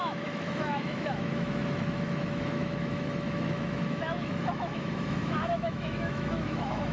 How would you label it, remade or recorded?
remade